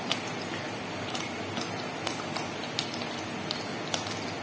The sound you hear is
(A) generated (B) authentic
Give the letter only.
B